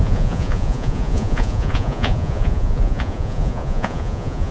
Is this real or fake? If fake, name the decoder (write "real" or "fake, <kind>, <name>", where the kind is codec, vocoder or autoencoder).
fake, vocoder, Vocos